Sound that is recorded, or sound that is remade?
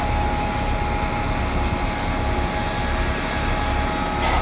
recorded